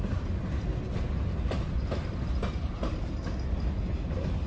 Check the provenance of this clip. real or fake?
real